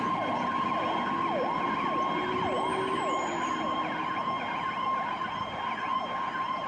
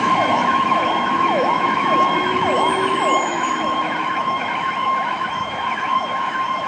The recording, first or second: first